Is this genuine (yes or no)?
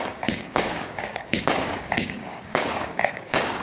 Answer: no